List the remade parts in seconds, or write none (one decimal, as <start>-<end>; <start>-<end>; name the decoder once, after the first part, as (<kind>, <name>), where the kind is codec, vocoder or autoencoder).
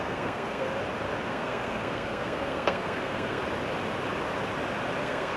0.0-0.7 (codec, SNAC); 1.3-3.4; 5.0-5.4